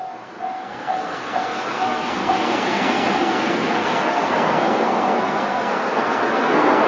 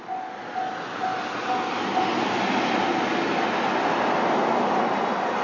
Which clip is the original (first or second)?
second